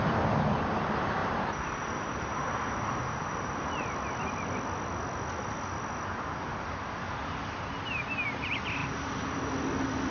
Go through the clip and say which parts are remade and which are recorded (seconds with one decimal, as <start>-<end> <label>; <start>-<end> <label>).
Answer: 0.0-1.2 recorded; 1.2-3.7 remade; 3.7-8.8 recorded; 8.8-9.5 remade; 9.5-10.1 recorded